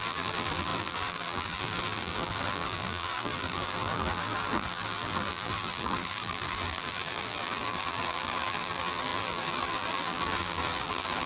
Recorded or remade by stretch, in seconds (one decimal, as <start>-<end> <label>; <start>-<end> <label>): 0.0-11.3 remade